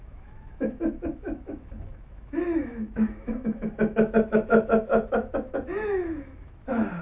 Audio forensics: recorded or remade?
remade